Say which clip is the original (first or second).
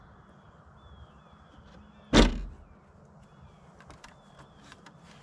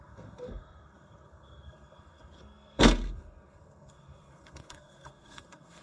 first